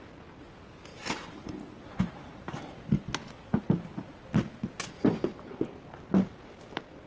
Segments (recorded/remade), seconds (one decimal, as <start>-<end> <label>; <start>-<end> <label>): 0.0-0.9 recorded; 0.9-2.5 remade; 2.5-7.1 recorded